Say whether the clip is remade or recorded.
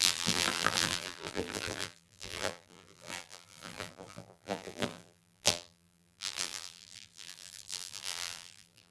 remade